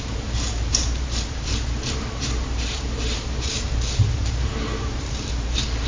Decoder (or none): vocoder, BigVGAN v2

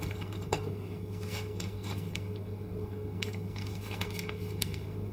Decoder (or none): codec, SNAC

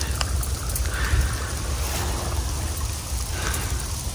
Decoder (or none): none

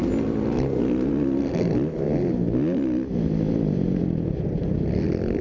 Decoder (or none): none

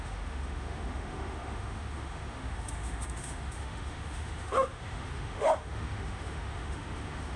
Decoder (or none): autoencoder, DAC-VAE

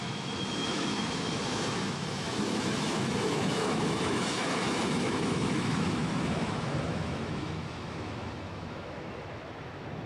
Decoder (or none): autoencoder, DAC-VAE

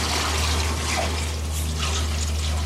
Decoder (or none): none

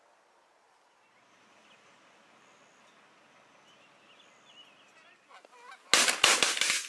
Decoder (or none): none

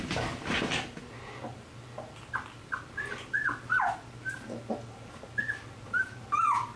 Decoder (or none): none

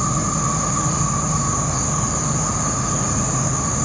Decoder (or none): none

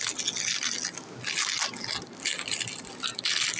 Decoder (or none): none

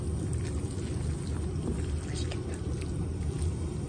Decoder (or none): none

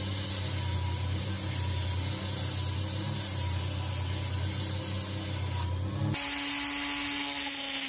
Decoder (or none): none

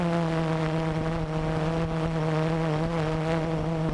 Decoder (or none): none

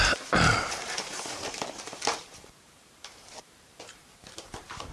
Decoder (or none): vocoder, BigVGAN v2